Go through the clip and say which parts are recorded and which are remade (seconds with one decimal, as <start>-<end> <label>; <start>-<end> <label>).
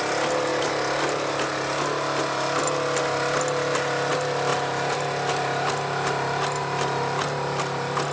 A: 0.0-8.1 recorded